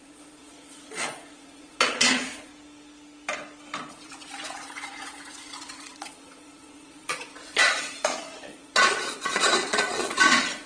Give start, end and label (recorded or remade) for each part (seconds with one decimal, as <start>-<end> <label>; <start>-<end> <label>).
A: 0.0-2.5 remade; 2.5-3.9 recorded; 3.9-10.7 remade